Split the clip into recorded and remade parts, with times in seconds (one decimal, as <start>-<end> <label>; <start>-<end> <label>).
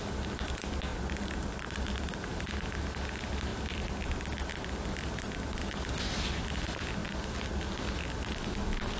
0.0-0.9 recorded; 0.9-2.1 remade; 2.1-3.5 recorded; 3.5-4.7 remade; 4.7-7.0 recorded; 7.0-7.8 remade; 7.8-9.0 recorded